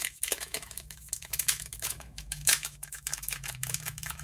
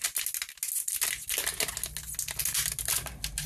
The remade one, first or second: first